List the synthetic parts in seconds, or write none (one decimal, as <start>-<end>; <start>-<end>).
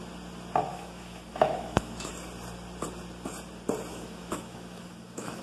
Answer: 0.7-2.1; 3.9-5.4